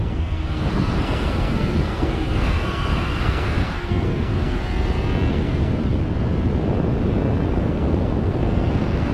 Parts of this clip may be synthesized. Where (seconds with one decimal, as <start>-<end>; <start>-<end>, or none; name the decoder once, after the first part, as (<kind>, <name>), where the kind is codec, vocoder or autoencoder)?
0.0-4.6 (codec, SNAC); 5.3-5.8; 7.6-9.1